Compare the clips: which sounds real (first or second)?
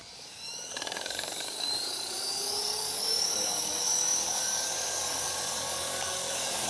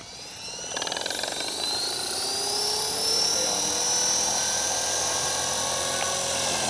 second